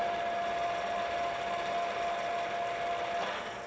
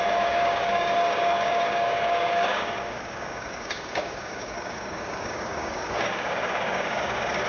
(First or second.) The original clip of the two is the first